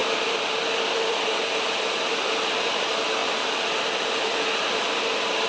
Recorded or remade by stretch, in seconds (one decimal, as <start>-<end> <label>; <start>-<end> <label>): 0.0-5.5 recorded